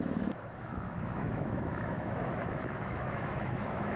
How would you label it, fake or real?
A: fake